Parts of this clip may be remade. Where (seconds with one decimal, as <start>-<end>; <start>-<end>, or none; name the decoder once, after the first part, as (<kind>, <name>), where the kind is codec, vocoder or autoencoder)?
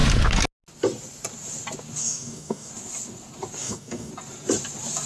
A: 2.0-2.7 (codec, DAC); 3.6-4.1